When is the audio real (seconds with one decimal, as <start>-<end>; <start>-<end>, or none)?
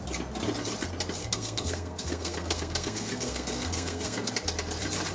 0.0-1.2; 4.3-5.1